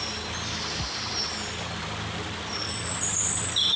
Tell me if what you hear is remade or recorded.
recorded